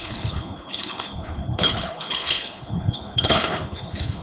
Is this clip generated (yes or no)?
yes